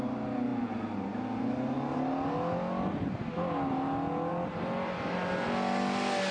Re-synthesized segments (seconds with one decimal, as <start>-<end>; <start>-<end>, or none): none